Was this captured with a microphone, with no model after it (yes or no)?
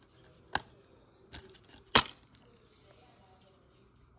yes